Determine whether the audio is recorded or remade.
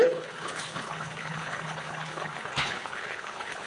remade